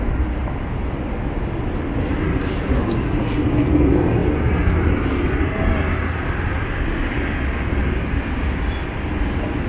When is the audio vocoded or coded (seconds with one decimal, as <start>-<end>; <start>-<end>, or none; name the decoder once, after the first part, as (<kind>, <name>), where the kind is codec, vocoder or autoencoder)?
none